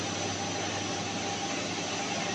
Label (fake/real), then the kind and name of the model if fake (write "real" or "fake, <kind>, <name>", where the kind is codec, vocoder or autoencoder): real